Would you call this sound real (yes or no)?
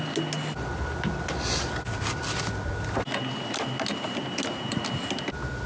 yes